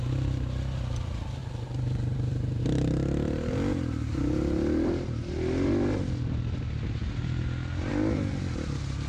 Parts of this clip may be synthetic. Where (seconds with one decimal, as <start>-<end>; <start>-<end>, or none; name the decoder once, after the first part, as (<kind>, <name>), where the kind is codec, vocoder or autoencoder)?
1.4-2.6 (vocoder, BigVGAN v2)